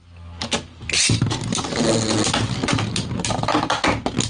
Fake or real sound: real